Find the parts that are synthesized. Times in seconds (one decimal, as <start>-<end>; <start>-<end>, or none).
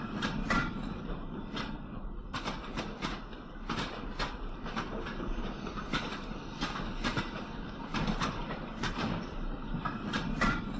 0.0-10.8